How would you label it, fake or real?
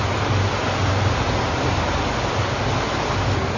real